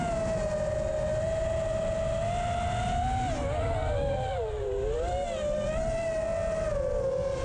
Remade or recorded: recorded